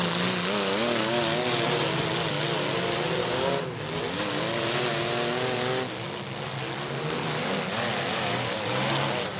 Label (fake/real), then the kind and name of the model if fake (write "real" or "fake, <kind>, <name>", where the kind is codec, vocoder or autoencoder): real